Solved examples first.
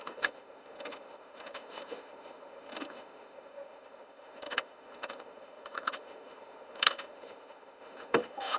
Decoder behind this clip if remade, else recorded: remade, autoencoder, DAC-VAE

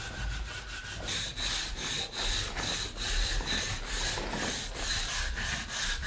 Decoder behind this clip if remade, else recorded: recorded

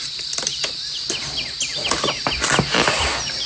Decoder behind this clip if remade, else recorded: recorded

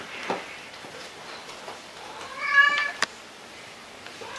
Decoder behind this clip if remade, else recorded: remade, vocoder, BigVGAN v2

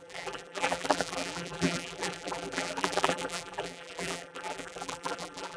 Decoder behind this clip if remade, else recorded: remade, vocoder, BigVGAN v2